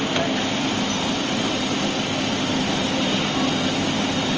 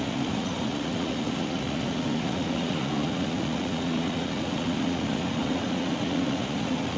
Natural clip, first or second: first